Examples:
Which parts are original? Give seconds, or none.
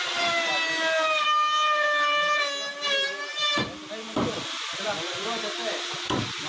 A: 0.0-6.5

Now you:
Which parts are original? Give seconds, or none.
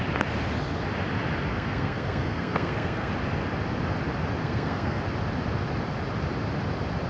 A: 0.0-1.5; 3.1-4.4; 5.0-7.1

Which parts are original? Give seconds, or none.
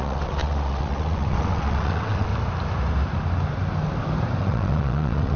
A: 2.3-4.4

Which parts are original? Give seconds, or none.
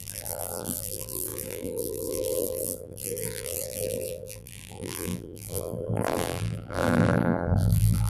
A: none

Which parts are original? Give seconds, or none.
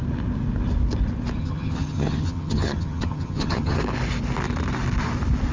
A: 0.0-1.4; 3.8-5.5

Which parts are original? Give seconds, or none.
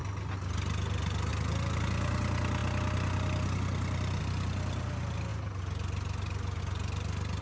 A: 0.0-7.4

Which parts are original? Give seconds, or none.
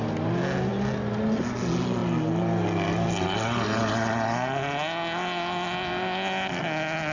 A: 0.0-7.1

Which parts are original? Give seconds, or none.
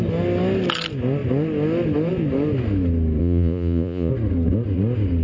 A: 0.0-3.2; 4.1-5.2